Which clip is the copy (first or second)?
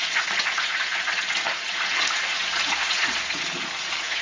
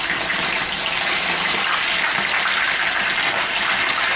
first